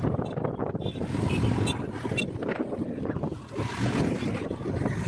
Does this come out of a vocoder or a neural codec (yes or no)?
no